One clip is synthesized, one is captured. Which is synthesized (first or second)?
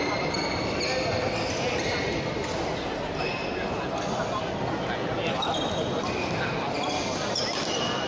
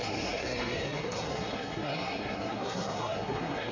second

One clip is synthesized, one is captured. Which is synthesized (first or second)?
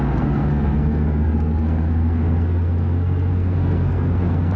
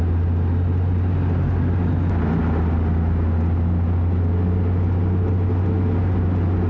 first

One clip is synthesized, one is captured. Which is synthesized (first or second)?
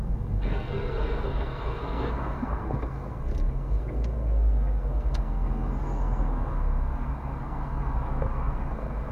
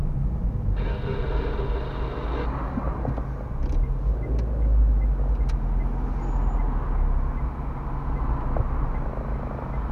first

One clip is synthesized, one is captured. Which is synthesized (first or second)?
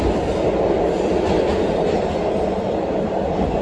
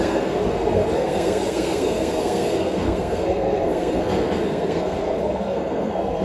second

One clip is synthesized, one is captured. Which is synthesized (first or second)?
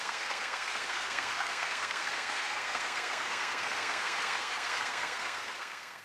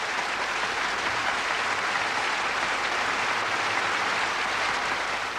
first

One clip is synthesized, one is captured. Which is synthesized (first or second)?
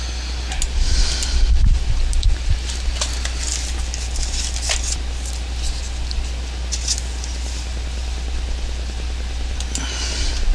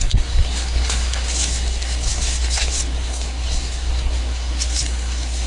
second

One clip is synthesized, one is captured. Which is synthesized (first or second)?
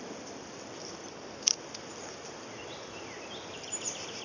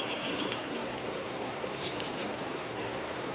second